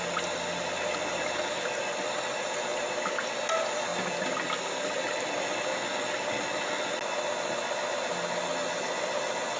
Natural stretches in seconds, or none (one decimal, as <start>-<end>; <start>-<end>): 0.0-9.6